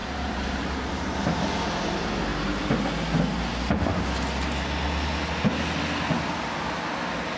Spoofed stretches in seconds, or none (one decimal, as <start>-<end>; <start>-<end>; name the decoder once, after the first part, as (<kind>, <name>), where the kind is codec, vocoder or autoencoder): 0.0-1.0 (vocoder, BigVGAN v2)